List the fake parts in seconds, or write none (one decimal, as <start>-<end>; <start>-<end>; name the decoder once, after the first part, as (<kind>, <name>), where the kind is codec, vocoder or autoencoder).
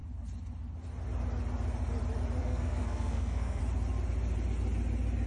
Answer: 2.4-3.6 (codec, SNAC)